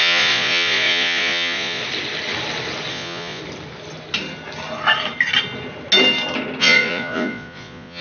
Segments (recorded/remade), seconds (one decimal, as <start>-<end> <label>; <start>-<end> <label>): 0.0-1.8 remade; 1.8-2.9 recorded; 2.9-3.4 remade; 3.4-6.6 recorded; 6.6-8.0 remade